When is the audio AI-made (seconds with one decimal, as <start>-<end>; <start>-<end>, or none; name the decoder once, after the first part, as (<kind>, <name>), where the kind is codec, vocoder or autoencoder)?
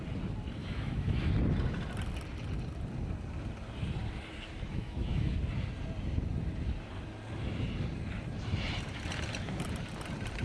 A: 0.6-1.3 (autoencoder, DAC-VAE); 4.7-5.3